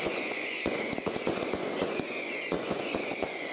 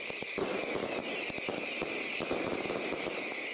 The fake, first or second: first